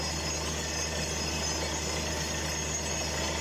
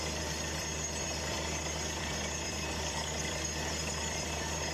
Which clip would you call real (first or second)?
first